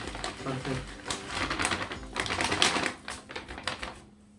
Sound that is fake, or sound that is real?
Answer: real